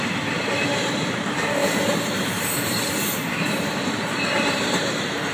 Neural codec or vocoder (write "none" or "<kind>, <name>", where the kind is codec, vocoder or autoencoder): vocoder, BigVGAN v2